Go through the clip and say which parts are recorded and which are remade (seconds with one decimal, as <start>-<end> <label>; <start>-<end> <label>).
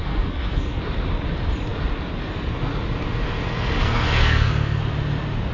0.0-0.8 remade; 0.8-3.8 recorded; 3.8-4.8 remade; 4.8-5.5 recorded